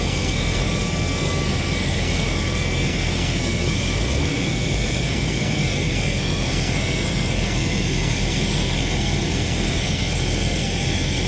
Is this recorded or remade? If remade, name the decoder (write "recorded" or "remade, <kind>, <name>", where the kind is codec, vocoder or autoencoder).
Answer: remade, codec, SNAC